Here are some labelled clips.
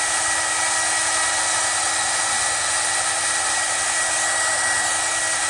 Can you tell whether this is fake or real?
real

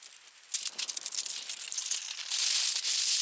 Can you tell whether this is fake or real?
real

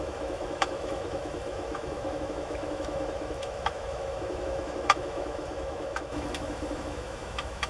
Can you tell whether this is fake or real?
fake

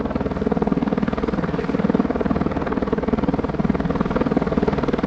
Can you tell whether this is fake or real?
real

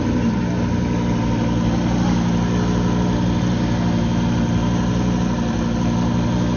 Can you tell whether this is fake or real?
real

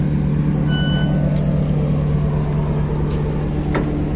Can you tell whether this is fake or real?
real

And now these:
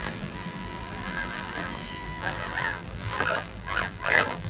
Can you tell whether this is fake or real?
fake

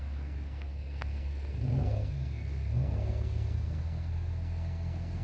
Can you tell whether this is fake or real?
fake